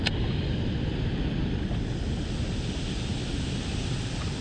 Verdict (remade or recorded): recorded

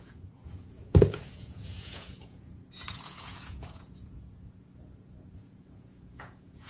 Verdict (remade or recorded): remade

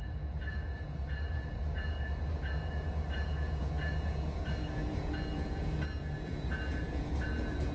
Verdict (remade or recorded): remade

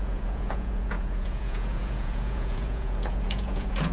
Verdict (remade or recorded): remade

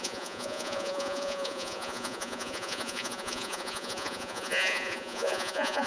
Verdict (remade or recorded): remade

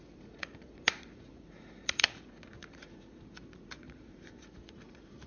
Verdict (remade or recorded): remade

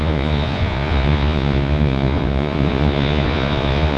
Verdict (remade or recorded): remade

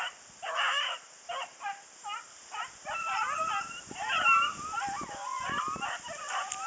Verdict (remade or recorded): recorded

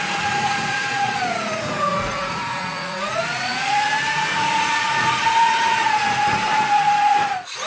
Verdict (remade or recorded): remade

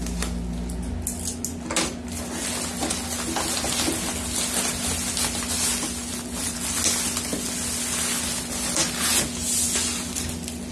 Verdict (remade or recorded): recorded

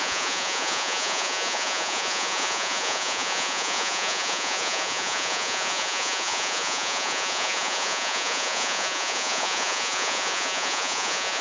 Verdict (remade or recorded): remade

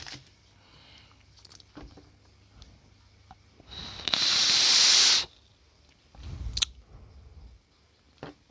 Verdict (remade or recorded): recorded